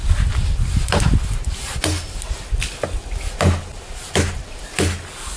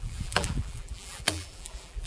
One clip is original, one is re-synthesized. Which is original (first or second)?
first